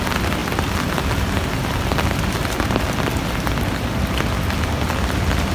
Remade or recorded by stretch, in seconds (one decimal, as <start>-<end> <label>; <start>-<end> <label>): 0.0-2.4 remade; 2.4-3.3 recorded; 3.3-5.5 remade

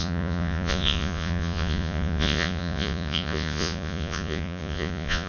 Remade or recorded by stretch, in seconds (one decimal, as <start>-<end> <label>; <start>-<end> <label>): 0.0-5.3 remade